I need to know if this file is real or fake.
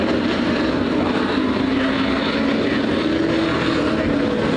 real